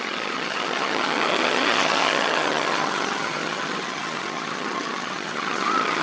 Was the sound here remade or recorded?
remade